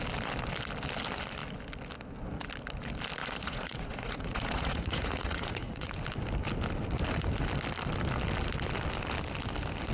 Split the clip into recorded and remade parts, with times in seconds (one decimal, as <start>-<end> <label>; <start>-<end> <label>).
0.0-3.2 recorded; 3.2-5.9 remade; 5.9-9.9 recorded